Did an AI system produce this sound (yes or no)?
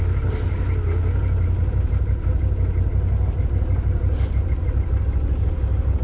no